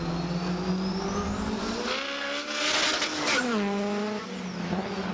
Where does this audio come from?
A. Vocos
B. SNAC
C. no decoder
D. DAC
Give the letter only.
C